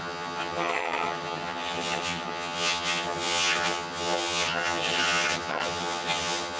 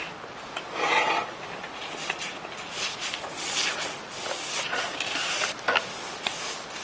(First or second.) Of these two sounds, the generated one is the first